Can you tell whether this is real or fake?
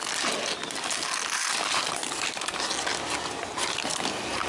real